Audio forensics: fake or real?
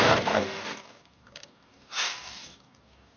fake